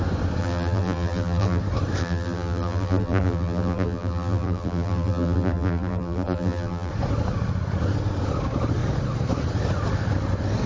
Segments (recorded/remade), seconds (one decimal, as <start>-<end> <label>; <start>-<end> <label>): 0.0-0.4 recorded; 0.4-1.6 remade; 1.6-2.0 recorded; 2.0-6.9 remade; 6.9-10.7 recorded